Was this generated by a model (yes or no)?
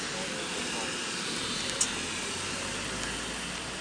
no